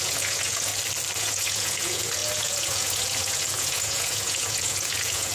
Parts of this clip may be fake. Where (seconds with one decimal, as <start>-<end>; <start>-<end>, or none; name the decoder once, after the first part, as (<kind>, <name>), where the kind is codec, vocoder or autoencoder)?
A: 0.0-0.7 (vocoder, Vocos); 1.2-5.3